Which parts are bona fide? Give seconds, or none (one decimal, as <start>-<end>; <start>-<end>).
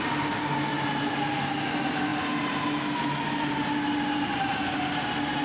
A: 0.0-0.7; 1.5-5.4